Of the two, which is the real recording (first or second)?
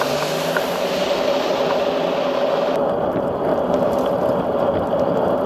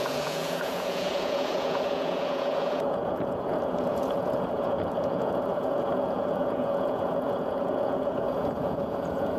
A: first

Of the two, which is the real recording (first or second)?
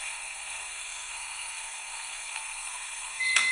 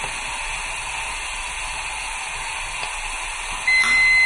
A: second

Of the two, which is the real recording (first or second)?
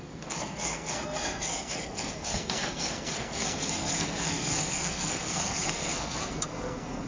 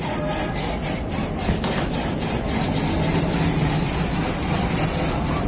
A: second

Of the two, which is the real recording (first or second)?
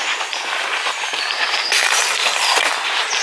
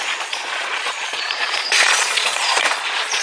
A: first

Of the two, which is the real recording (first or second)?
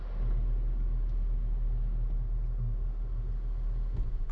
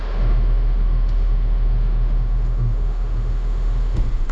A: first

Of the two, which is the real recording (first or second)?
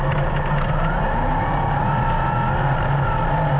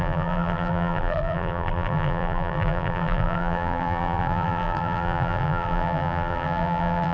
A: first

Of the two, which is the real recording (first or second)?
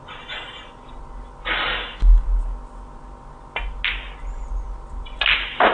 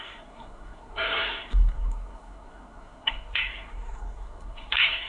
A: first